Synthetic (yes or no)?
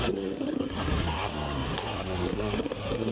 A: yes